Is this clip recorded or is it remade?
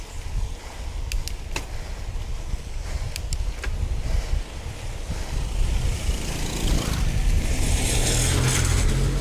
recorded